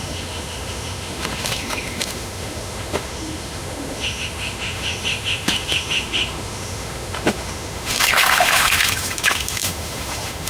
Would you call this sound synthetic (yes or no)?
yes